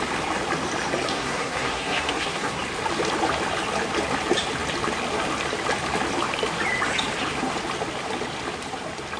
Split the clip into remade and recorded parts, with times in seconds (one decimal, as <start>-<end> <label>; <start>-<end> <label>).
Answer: 0.0-1.1 recorded; 1.1-2.6 remade; 2.6-9.2 recorded